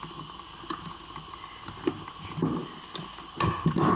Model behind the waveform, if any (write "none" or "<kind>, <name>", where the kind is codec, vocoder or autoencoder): none